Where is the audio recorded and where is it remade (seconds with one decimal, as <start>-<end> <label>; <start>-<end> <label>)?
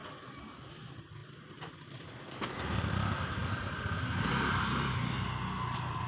0.0-6.1 recorded